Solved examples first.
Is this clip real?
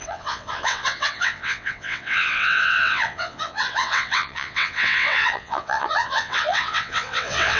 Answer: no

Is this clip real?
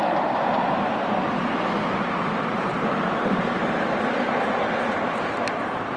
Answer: no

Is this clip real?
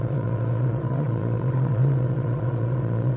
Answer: no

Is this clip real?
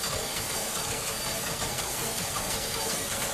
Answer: no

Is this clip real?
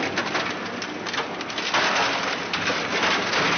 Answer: yes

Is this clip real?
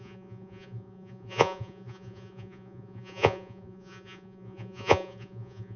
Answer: no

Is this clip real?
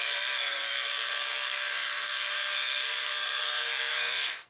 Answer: no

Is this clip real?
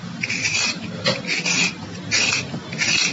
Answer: yes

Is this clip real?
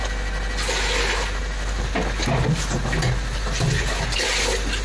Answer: yes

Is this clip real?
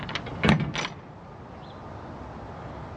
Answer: yes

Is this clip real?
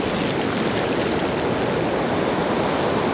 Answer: yes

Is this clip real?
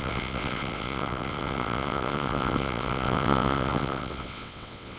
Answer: no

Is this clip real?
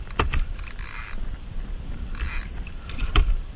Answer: no